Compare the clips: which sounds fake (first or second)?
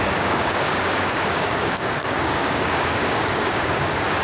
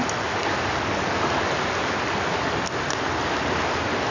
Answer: first